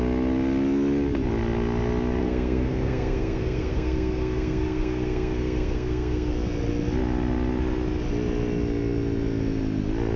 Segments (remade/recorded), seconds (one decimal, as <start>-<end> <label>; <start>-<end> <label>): 0.0-2.2 recorded; 2.2-6.3 remade; 6.3-10.2 recorded